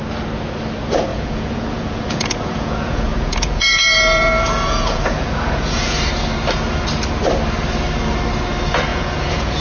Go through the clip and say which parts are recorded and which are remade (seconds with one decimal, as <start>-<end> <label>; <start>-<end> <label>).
0.0-1.1 recorded; 1.1-6.0 remade; 6.0-8.9 recorded; 8.9-9.6 remade